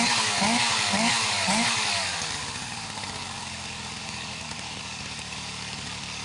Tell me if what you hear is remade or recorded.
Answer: remade